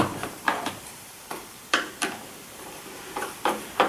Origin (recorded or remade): remade